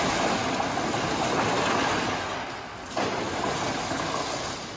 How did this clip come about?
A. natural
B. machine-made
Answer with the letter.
A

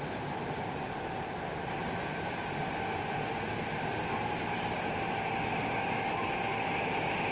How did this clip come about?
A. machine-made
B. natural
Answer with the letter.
B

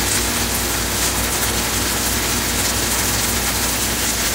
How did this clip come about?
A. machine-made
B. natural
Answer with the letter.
B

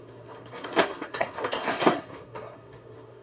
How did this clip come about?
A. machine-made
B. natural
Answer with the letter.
A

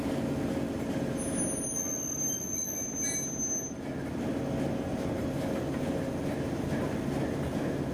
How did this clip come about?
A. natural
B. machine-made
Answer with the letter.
A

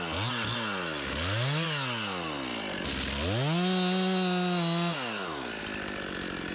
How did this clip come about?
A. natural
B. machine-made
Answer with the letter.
A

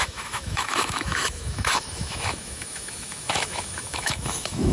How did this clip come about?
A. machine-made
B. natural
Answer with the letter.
A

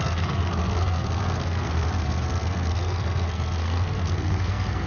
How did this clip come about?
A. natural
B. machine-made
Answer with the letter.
B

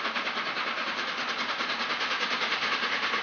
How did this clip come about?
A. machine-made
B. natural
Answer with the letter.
B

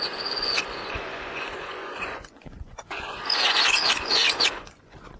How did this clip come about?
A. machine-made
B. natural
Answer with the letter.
A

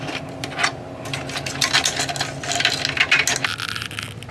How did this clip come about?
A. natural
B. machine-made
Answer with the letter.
A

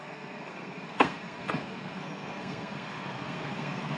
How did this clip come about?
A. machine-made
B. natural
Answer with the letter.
A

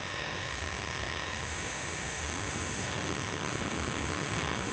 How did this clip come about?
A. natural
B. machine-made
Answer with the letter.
B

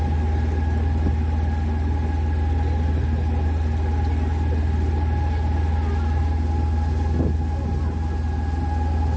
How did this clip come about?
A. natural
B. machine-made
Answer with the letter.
A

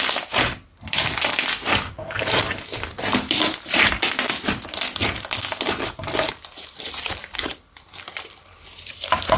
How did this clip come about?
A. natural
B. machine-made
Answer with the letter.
B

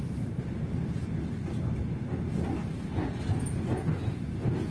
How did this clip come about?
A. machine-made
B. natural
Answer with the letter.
B